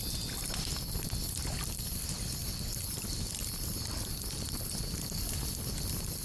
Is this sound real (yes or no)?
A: yes